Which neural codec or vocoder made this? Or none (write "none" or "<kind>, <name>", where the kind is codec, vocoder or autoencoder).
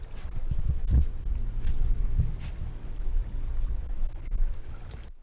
none